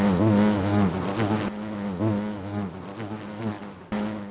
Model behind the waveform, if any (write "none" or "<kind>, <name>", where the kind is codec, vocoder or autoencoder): none